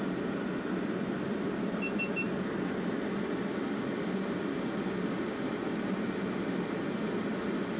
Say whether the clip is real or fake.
real